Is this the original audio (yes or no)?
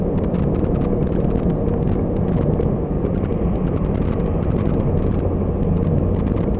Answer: yes